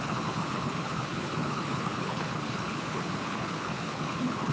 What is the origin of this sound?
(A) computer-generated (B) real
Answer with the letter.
A